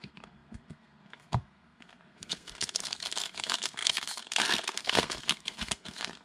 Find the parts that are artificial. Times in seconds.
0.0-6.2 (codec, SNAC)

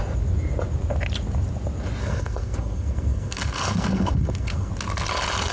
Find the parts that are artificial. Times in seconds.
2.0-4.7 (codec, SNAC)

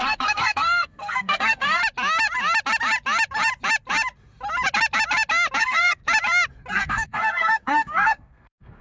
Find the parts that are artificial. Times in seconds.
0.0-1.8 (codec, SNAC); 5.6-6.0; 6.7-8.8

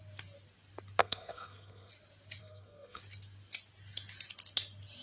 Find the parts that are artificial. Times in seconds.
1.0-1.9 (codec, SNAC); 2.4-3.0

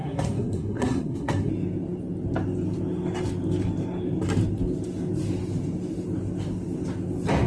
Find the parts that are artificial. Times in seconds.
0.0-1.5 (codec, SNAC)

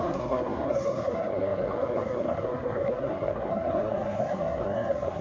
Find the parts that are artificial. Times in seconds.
0.0-5.2 (codec, SNAC)

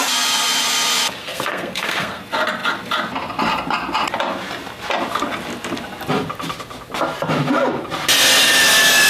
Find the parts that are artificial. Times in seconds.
1.2-2.2 (codec, SNAC)